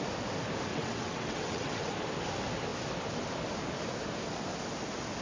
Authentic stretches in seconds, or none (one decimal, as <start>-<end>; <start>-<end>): 0.0-0.7; 1.9-5.2